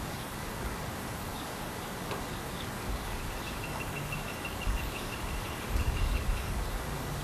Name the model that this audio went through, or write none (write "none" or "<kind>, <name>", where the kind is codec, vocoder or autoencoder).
codec, DAC